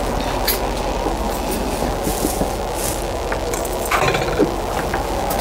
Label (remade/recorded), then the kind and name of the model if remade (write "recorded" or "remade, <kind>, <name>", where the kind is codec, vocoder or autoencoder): recorded